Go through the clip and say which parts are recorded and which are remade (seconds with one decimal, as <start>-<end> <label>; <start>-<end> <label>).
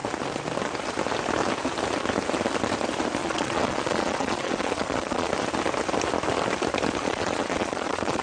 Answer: 0.0-3.2 recorded; 3.2-5.3 remade; 5.3-7.0 recorded; 7.0-8.2 remade